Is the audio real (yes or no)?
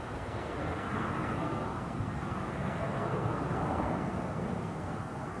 no